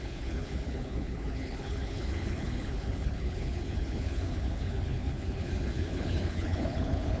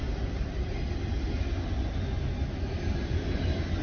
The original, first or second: second